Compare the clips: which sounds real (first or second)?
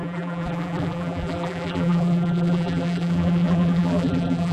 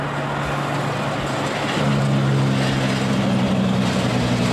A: second